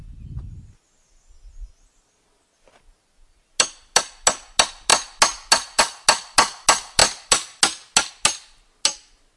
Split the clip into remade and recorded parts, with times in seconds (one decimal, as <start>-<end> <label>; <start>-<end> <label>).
0.0-9.4 recorded